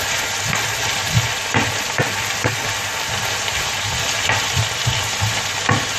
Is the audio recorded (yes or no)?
yes